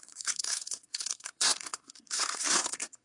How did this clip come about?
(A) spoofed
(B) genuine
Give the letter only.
A